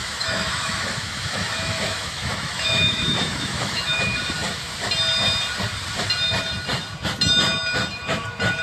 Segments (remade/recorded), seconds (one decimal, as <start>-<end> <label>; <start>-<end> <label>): 0.0-4.0 remade; 4.0-8.6 recorded